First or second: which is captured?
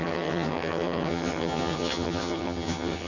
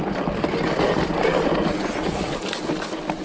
second